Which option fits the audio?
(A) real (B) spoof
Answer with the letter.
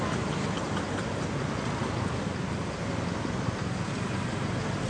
A